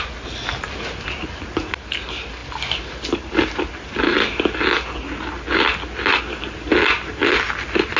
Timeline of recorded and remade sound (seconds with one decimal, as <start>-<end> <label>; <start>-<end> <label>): 0.0-8.0 recorded